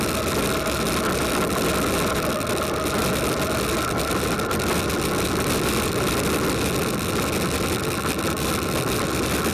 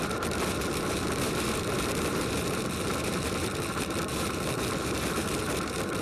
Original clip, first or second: first